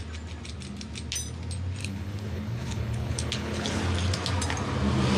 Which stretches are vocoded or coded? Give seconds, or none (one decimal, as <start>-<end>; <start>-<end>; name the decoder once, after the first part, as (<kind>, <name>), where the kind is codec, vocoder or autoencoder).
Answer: 1.8-3.8 (codec, HILCodec)